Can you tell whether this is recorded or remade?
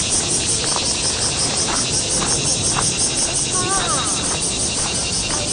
recorded